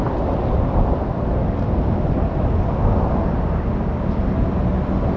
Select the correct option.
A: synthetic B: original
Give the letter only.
B